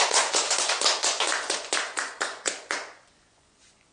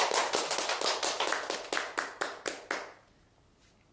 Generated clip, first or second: first